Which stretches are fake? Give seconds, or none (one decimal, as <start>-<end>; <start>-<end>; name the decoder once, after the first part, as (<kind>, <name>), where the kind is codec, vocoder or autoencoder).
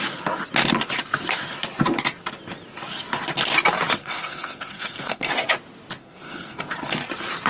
4.0-5.3 (codec, SNAC); 6.0-6.6